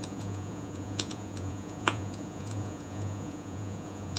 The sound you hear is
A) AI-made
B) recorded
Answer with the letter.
A